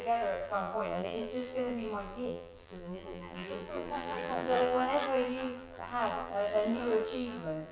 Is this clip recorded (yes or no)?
no